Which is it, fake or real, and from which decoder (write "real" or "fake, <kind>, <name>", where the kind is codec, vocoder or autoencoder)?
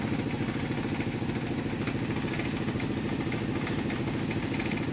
real